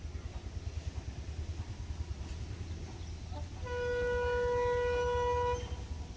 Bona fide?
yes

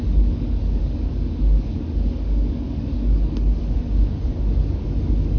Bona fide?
no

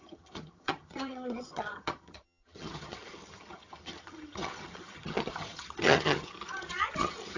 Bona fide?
no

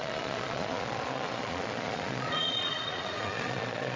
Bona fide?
no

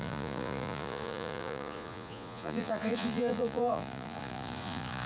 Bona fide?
no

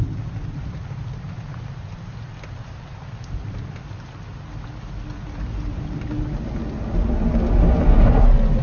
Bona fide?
yes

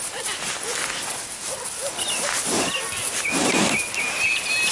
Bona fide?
yes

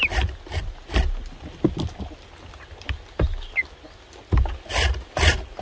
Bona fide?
yes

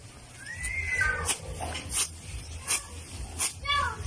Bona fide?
yes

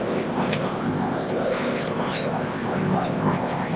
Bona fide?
no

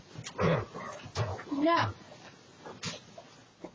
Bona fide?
yes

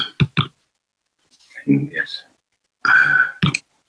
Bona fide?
yes